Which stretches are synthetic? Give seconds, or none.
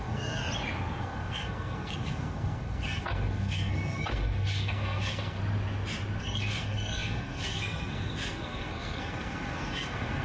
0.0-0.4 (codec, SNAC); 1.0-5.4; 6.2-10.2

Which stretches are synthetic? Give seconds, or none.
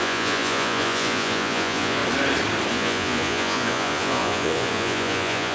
0.0-2.0 (vocoder, Vocos); 2.7-5.5